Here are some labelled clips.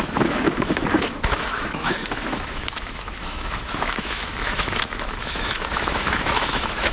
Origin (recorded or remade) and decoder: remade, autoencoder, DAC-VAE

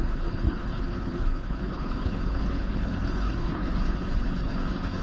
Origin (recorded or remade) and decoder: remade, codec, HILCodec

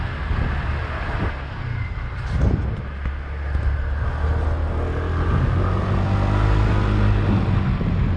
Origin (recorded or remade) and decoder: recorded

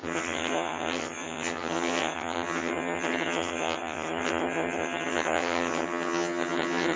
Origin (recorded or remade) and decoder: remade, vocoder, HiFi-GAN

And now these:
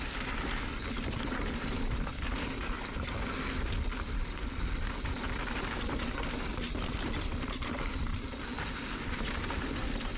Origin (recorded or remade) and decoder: recorded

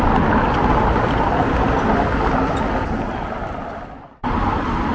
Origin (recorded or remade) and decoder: recorded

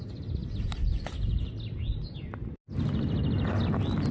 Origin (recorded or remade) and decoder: recorded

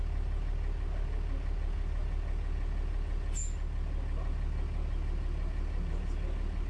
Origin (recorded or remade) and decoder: recorded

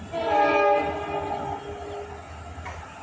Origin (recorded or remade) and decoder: recorded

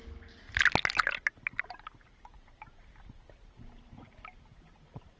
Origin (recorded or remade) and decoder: recorded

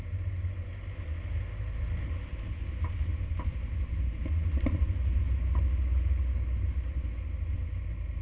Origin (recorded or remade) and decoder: recorded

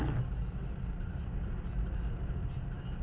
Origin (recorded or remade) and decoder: recorded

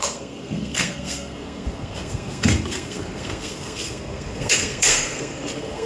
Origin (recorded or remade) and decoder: remade, codec, SNAC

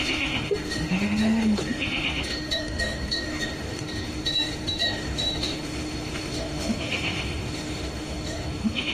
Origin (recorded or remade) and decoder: remade, autoencoder, DAC-VAE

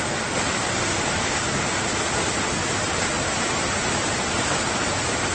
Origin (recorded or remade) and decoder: recorded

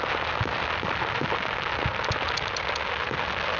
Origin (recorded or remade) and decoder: recorded